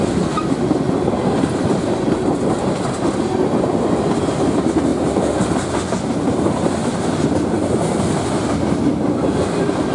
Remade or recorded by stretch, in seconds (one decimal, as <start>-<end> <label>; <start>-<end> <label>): 0.0-9.9 recorded